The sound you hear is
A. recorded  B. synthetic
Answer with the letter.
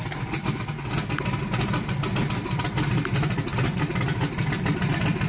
A